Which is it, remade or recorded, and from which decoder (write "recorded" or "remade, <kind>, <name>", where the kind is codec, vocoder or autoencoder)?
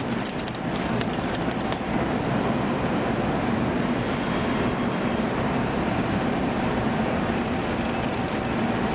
remade, vocoder, BigVGAN v2